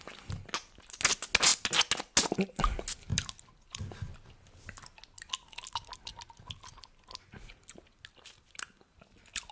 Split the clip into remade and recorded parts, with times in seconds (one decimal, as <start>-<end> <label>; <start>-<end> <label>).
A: 0.0-9.5 recorded